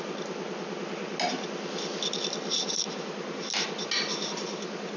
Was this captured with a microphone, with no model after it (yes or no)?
yes